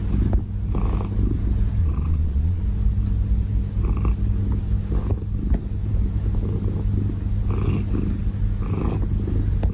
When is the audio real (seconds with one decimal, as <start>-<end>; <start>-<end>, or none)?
0.0-1.8; 2.6-9.7